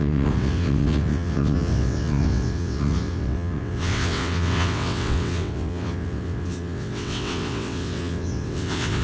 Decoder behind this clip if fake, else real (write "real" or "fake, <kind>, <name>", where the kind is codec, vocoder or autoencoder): fake, vocoder, WaveNeXt